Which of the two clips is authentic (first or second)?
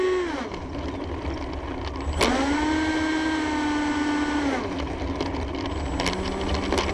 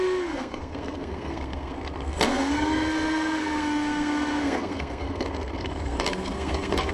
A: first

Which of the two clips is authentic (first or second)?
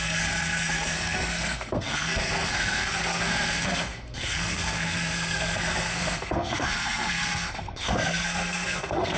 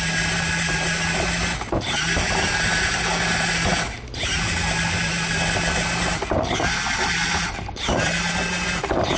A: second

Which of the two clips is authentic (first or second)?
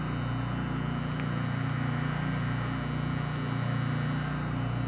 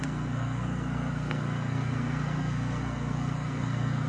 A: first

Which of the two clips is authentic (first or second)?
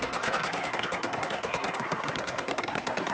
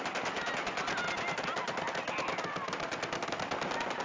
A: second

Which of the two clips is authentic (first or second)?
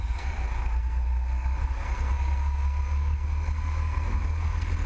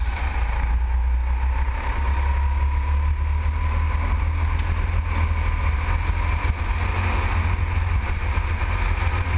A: second